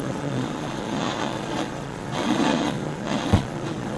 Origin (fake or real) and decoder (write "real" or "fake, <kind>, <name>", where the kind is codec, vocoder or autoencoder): fake, vocoder, Vocos